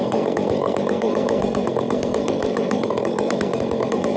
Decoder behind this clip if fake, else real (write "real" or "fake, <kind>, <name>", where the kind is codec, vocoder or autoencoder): fake, codec, SNAC